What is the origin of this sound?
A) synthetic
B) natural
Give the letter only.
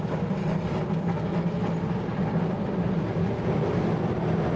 B